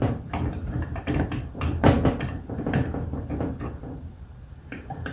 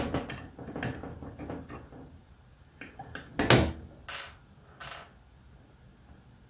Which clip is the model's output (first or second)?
first